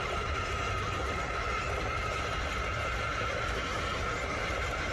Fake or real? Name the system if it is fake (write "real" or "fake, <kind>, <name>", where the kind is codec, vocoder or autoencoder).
real